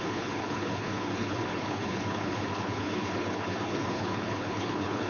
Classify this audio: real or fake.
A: fake